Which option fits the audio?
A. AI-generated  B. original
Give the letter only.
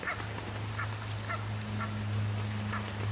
B